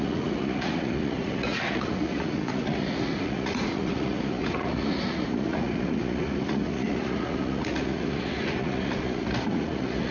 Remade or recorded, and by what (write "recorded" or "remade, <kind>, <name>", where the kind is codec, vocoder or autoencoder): remade, vocoder, Vocos